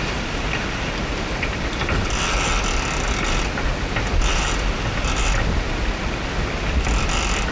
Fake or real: real